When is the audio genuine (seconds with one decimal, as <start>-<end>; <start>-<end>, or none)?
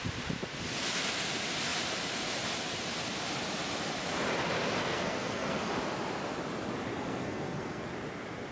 0.0-4.8; 5.7-6.9; 7.9-8.5